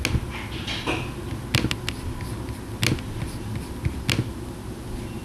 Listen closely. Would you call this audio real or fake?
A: real